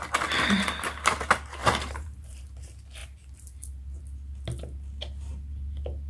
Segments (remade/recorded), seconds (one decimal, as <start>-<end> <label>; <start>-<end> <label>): 0.0-1.6 recorded; 1.6-2.4 remade; 2.4-6.1 recorded